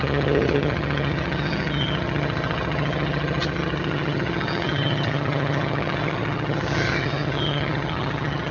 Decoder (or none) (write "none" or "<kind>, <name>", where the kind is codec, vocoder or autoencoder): vocoder, HiFi-GAN